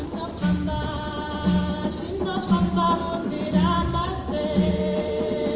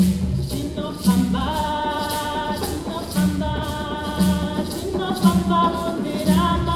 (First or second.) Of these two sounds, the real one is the first